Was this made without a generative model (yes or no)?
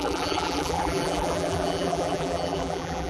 no